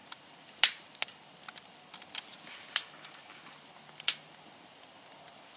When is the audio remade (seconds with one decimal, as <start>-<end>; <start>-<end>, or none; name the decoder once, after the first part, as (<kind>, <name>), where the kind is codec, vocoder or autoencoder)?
none